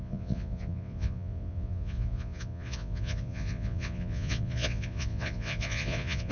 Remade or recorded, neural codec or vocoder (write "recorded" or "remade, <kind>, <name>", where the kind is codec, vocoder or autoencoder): remade, vocoder, Vocos